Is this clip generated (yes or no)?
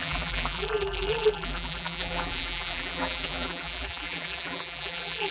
yes